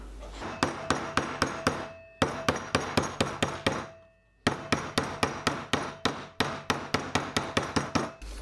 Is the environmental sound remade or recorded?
recorded